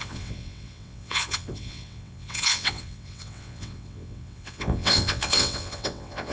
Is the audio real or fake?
fake